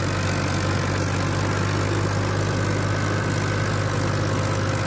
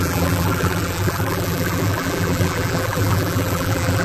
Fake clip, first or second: second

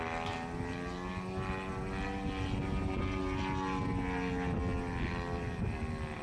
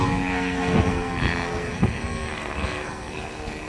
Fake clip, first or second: second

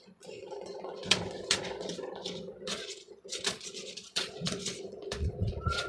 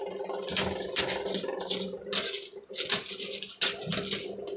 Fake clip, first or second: first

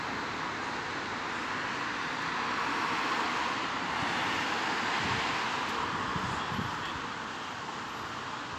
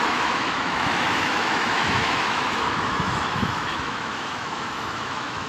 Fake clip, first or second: second